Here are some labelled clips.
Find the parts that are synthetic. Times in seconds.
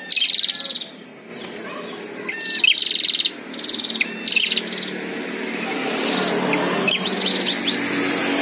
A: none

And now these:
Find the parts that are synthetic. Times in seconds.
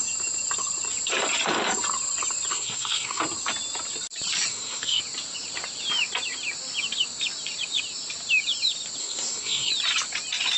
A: 2.5-3.2 (codec, SNAC); 4.5-5.0; 9.0-9.7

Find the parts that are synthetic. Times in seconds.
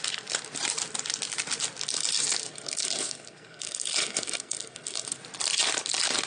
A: 2.4-5.2 (codec, SNAC)